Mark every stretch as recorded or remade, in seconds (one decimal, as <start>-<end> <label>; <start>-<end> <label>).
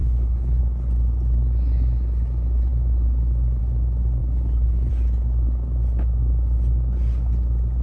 0.0-0.6 remade; 0.6-4.2 recorded; 4.2-4.9 remade; 4.9-7.8 recorded